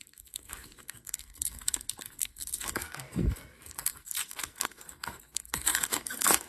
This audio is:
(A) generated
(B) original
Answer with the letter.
A